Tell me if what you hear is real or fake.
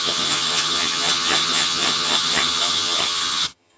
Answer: fake